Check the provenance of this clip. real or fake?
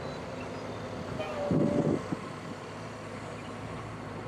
real